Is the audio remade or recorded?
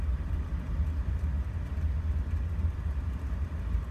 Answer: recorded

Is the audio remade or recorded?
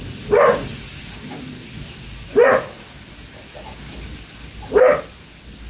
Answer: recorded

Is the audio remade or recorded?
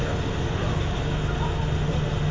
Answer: recorded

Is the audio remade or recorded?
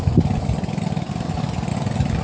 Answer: recorded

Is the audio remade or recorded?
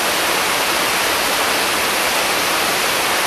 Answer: recorded